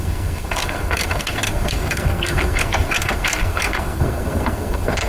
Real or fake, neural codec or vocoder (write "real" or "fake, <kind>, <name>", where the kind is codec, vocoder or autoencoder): fake, codec, SNAC